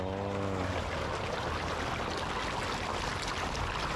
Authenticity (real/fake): real